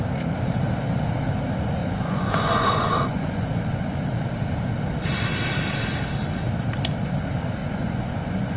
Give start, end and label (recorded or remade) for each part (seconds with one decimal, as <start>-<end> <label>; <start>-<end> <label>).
0.0-1.8 recorded; 1.8-4.0 remade; 4.0-7.6 recorded; 7.6-8.6 remade